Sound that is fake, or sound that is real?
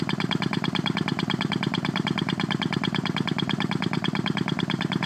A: real